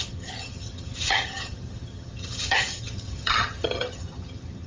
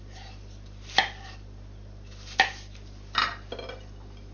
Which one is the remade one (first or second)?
first